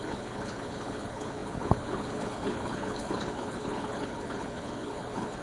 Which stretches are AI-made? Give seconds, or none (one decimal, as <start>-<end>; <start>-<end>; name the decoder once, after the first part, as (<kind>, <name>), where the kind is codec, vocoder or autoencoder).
0.0-5.4 (codec, HILCodec)